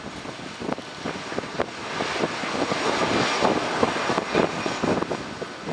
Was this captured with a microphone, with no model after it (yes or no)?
yes